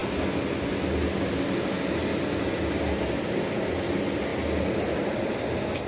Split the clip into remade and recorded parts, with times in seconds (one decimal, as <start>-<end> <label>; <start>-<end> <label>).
0.0-5.9 recorded